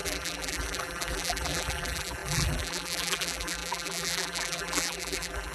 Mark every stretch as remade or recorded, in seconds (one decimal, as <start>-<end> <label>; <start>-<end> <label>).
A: 0.0-5.5 remade